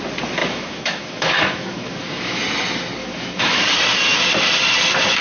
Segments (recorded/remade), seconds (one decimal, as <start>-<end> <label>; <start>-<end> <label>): 0.0-0.4 recorded; 0.4-2.4 remade; 2.4-3.0 recorded; 3.0-3.6 remade; 3.6-5.2 recorded